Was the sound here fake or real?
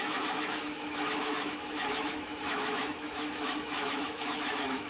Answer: fake